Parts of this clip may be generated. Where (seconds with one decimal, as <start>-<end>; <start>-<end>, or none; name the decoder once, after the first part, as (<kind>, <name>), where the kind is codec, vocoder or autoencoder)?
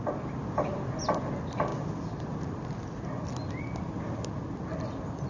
none